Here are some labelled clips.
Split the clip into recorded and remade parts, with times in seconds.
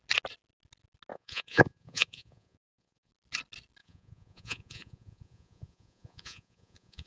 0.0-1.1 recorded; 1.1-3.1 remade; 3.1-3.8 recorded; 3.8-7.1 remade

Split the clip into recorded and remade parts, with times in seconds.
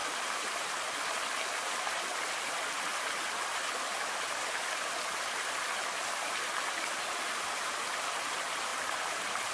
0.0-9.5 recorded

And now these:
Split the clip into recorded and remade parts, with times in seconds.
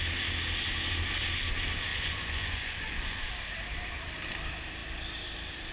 0.0-1.9 recorded; 1.9-3.3 remade; 3.3-5.7 recorded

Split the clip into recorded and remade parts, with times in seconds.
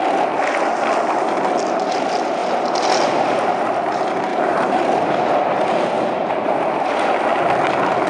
0.0-4.3 recorded; 4.3-5.1 remade; 5.1-6.2 recorded; 6.2-7.1 remade; 7.1-8.1 recorded